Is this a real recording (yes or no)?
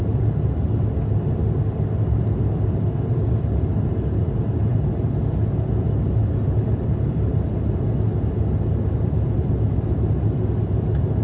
yes